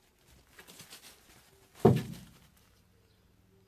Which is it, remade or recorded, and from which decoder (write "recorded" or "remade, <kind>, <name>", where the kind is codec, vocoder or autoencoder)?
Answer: recorded